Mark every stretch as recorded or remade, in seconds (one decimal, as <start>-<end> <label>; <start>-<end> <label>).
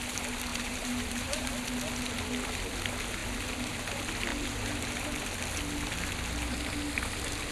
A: 0.0-0.5 recorded; 0.5-1.5 remade; 1.5-7.5 recorded